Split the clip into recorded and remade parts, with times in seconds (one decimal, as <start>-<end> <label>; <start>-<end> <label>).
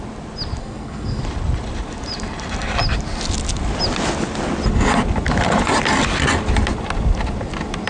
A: 0.0-0.6 recorded; 0.6-1.2 remade; 1.2-7.9 recorded